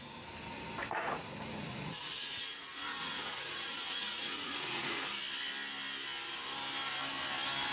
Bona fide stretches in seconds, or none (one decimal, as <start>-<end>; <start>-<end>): 0.0-0.8; 5.1-7.7